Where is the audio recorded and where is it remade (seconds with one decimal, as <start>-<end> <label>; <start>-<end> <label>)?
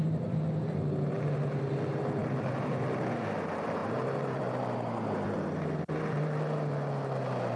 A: 0.0-2.2 recorded; 2.2-3.2 remade; 3.2-3.8 recorded; 3.8-5.6 remade; 5.6-7.6 recorded